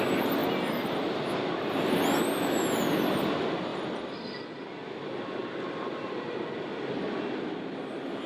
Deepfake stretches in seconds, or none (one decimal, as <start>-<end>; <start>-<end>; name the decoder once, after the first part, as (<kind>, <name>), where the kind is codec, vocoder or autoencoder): none